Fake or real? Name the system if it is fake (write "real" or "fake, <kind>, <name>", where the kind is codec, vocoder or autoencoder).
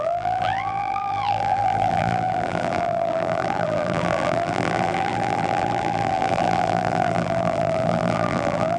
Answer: fake, vocoder, BigVGAN v2